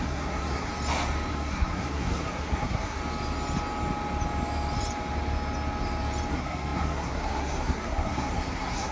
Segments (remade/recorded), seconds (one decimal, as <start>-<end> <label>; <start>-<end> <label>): 0.0-0.7 remade; 0.7-1.3 recorded; 1.3-3.0 remade; 3.0-6.3 recorded; 6.3-8.9 remade